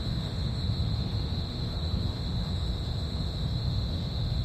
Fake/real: fake